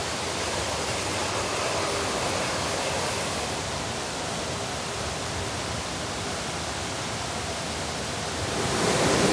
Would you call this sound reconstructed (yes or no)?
no